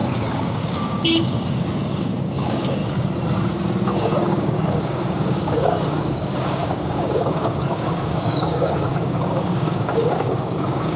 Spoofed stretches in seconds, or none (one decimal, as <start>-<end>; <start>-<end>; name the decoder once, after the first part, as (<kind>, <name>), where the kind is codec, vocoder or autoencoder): 0.0-2.8 (codec, DAC); 3.8-11.0